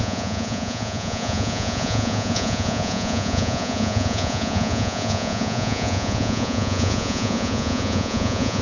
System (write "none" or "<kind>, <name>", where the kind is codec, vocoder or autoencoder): vocoder, Vocos